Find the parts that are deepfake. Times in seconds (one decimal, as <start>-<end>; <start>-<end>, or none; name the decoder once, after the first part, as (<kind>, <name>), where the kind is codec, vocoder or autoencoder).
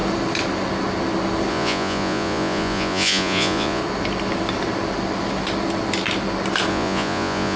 1.5-3.8 (vocoder, Vocos); 6.7-7.6